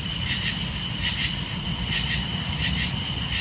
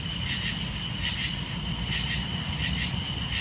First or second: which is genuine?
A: second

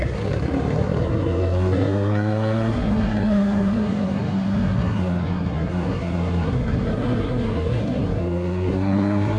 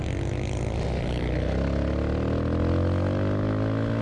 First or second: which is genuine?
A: second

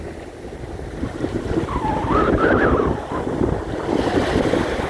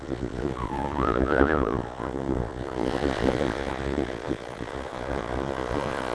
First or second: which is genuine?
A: first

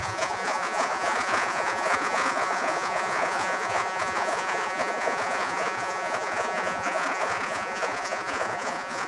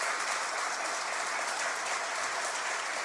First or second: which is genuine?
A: second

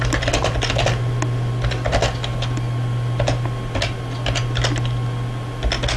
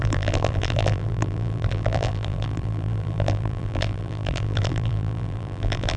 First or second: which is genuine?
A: first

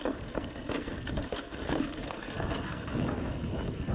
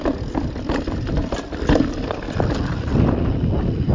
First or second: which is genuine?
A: second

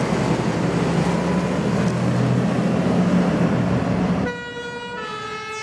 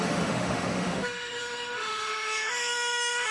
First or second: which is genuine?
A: first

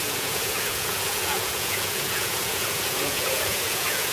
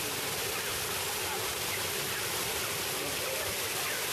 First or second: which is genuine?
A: second